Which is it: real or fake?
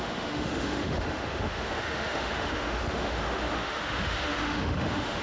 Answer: fake